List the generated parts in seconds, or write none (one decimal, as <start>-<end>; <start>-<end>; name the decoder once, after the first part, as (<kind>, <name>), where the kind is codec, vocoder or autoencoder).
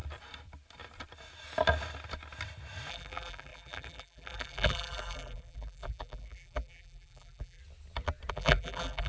2.9-7.6 (vocoder, BigVGAN v2); 8.3-9.1